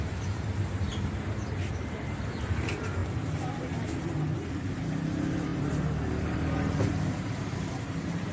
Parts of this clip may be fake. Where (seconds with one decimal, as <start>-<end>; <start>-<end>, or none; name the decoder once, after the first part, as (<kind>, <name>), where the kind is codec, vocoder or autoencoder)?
0.0-0.9 (vocoder, BigVGAN v2); 1.7-3.0; 4.5-8.3